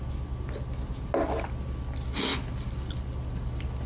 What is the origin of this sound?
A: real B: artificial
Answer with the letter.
A